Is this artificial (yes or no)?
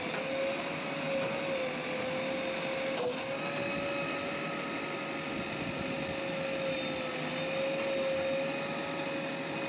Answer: no